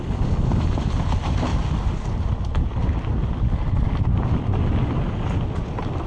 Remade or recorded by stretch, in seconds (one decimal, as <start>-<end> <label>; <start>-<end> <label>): 0.0-6.1 recorded